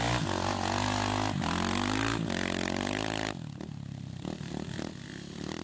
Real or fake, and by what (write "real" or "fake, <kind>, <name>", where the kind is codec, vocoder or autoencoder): real